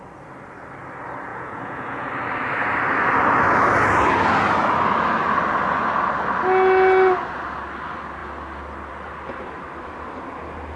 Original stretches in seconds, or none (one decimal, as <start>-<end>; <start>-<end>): 0.0-1.3; 2.1-10.8